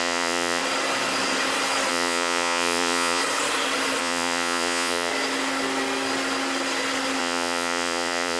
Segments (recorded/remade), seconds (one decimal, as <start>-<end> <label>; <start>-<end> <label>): 0.0-0.6 remade; 0.6-1.9 recorded; 1.9-3.2 remade; 3.2-4.0 recorded; 4.0-5.1 remade; 5.1-7.2 recorded; 7.2-8.4 remade